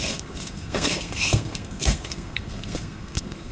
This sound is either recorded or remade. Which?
remade